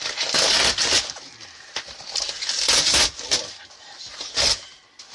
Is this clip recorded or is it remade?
recorded